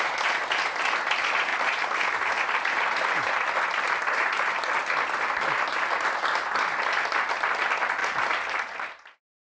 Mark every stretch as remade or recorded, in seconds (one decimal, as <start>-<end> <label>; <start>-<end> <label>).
0.0-9.4 recorded